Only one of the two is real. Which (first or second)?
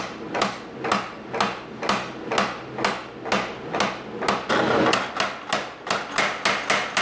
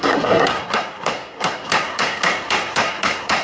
first